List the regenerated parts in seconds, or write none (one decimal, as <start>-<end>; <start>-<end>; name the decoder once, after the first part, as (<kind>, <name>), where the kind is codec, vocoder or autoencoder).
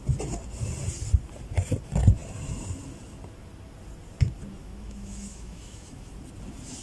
4.6-6.1 (autoencoder, DAC-VAE)